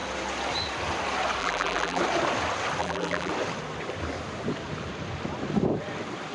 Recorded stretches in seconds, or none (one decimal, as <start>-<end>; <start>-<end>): 0.0-1.4; 2.0-2.8; 3.3-6.3